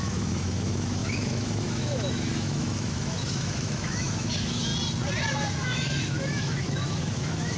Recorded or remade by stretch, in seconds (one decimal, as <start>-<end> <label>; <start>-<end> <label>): 0.0-4.7 remade; 4.7-5.3 recorded; 5.3-7.6 remade